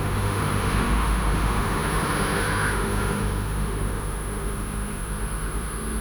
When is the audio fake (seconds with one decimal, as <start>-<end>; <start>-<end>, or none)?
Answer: 0.0-6.0